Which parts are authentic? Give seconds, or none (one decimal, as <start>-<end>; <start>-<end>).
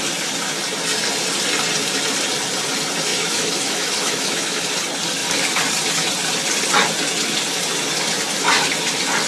0.0-3.1; 4.6-9.3